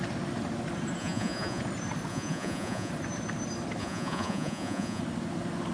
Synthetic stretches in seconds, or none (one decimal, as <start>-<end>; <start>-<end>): 1.0-1.6; 2.1-2.9; 3.8-5.0